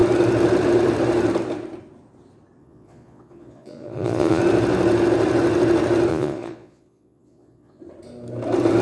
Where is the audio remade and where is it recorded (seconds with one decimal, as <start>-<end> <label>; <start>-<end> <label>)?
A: 0.0-2.6 recorded; 2.6-4.4 remade; 4.4-6.1 recorded; 6.1-7.8 remade; 7.8-8.8 recorded